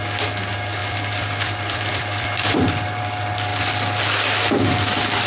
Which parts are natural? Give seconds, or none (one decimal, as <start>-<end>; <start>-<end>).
0.0-0.8; 3.0-5.3